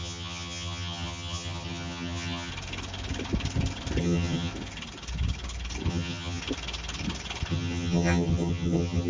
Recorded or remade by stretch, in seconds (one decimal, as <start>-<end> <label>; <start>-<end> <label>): 0.0-2.5 remade; 2.5-4.0 recorded; 4.0-4.5 remade; 4.5-5.9 recorded; 5.9-6.4 remade; 6.4-7.5 recorded; 7.5-9.1 remade

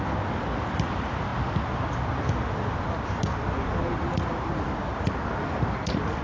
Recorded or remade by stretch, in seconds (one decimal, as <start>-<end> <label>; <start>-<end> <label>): 0.0-6.2 recorded